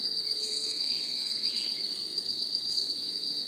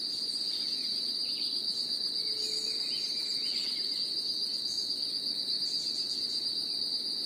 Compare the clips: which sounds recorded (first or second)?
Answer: second